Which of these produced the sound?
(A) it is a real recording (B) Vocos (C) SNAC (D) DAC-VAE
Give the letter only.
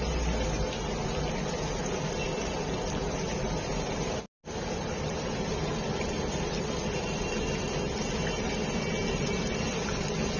A